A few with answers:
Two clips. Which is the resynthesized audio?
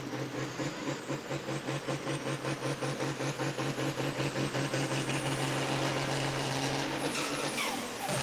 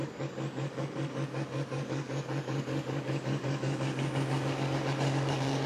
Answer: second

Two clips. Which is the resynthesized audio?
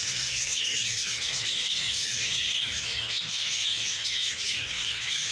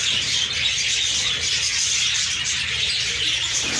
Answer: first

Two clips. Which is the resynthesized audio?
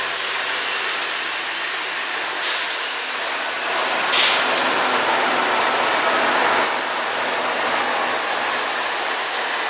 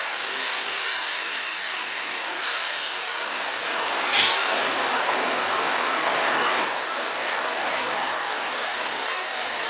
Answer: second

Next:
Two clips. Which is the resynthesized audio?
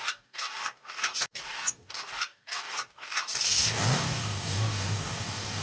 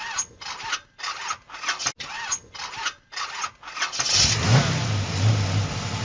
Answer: first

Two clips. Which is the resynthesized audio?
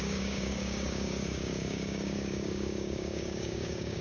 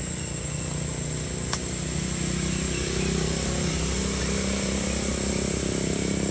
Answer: first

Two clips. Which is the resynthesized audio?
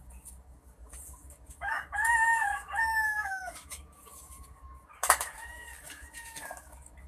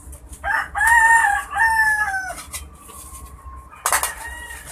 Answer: first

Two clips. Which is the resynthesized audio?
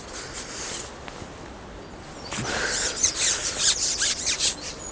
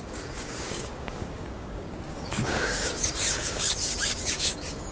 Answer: second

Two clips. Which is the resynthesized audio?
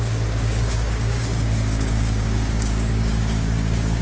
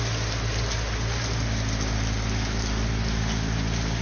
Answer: first